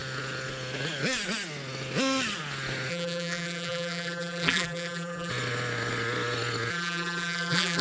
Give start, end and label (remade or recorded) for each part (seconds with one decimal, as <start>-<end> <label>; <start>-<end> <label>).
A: 0.0-2.9 recorded; 2.9-5.3 remade; 5.3-6.7 recorded; 6.7-7.8 remade